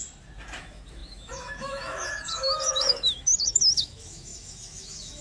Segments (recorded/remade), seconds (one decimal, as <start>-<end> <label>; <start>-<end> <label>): 0.0-0.6 recorded; 0.6-5.2 remade